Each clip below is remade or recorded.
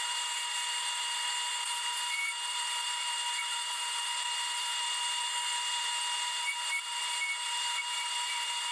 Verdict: remade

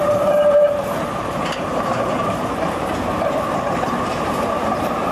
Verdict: remade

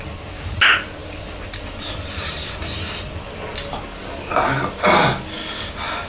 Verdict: recorded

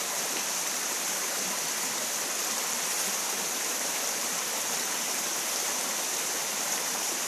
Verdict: remade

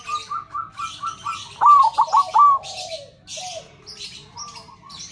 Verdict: recorded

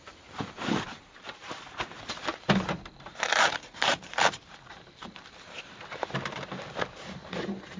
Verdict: remade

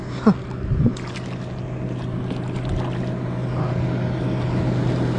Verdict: recorded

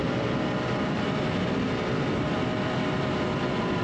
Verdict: remade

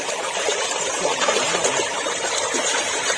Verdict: remade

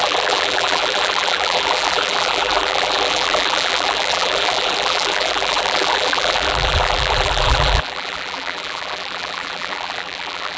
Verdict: remade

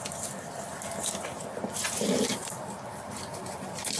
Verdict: recorded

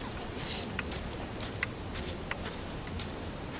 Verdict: remade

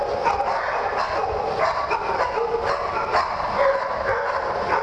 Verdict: recorded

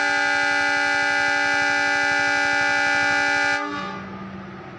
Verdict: recorded